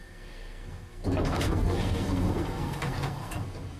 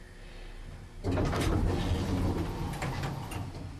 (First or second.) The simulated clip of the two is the first